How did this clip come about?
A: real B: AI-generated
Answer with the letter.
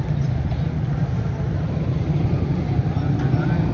A